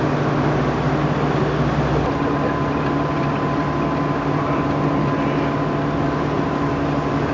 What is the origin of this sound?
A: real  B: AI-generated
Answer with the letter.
A